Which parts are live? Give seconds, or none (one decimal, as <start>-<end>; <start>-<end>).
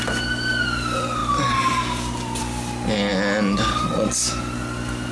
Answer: 0.0-5.1